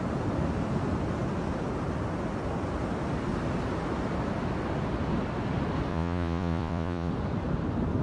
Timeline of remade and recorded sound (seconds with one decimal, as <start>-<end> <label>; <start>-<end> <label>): 0.0-5.9 recorded; 5.9-7.1 remade; 7.1-8.0 recorded